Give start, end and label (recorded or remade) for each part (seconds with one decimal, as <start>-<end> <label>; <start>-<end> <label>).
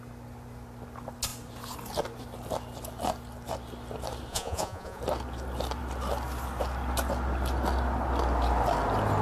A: 0.0-4.3 recorded; 4.3-5.0 remade; 5.0-9.2 recorded